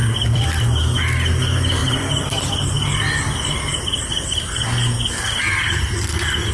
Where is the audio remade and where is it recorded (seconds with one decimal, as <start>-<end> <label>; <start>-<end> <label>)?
0.0-0.6 remade; 0.6-1.8 recorded; 1.8-2.9 remade; 2.9-3.7 recorded; 3.7-6.1 remade; 6.1-6.5 recorded